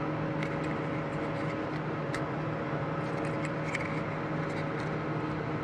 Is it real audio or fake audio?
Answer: real